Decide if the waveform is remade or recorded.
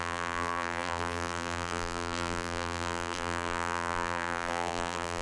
remade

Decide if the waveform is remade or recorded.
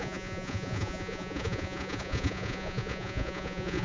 remade